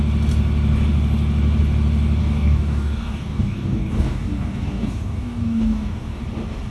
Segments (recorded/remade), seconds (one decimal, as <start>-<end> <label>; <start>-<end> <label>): 0.0-2.2 recorded; 2.2-6.2 remade; 6.2-6.7 recorded